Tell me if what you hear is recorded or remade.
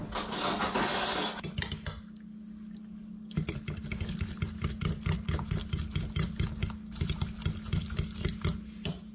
recorded